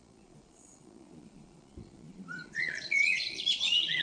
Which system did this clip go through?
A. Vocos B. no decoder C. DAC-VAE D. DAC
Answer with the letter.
A